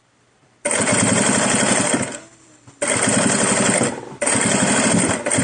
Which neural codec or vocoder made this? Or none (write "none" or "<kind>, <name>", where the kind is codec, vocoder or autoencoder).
vocoder, BigVGAN v2